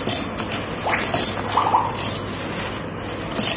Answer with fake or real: real